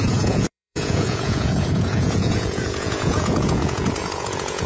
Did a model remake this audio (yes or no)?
yes